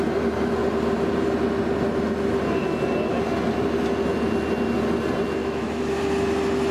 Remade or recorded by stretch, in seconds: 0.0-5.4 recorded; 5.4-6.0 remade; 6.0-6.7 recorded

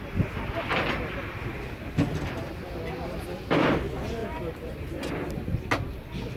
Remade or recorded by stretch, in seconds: 0.0-4.2 recorded; 4.2-5.1 remade; 5.1-6.4 recorded

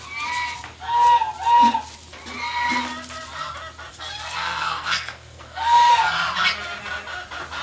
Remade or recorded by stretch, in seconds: 0.0-3.9 recorded; 3.9-5.9 remade; 5.9-7.6 recorded